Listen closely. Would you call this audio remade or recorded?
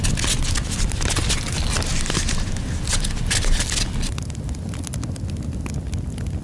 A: recorded